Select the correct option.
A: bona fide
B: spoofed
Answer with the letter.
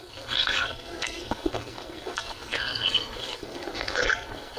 B